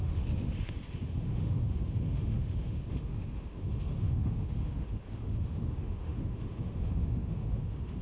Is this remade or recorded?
remade